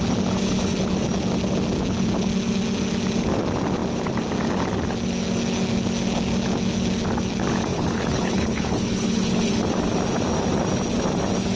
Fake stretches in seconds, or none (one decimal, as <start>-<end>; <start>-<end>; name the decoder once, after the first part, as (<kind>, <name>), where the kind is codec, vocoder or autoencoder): 7.7-9.5 (codec, HILCodec)